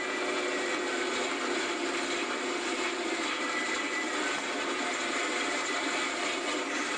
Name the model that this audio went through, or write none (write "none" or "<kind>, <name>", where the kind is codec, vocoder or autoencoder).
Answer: none